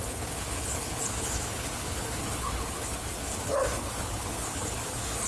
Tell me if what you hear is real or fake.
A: fake